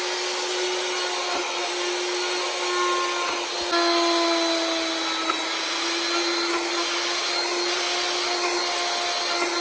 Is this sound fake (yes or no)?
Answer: no